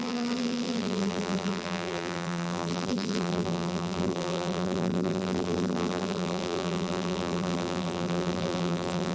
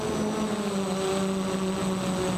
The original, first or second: second